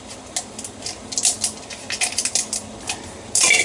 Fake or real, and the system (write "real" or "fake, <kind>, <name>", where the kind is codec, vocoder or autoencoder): real